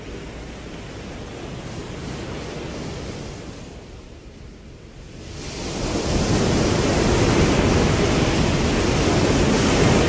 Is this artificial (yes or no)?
no